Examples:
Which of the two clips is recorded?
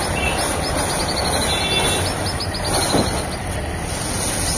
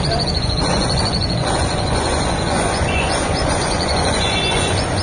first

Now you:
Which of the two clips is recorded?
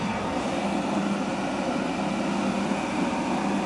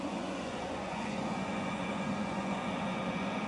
first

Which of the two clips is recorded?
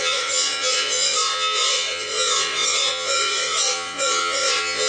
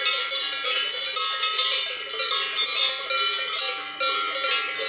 second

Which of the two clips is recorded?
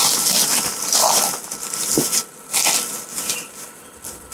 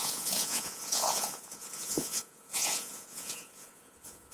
first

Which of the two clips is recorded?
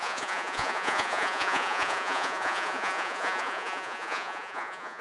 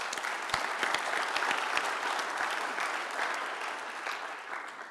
second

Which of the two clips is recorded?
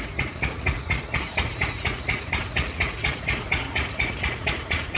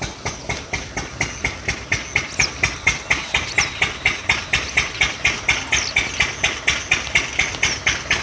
second